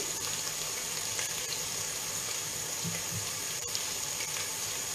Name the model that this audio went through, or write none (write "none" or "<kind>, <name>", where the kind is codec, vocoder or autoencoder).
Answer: vocoder, BigVGAN v2